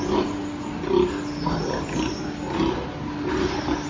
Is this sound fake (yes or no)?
no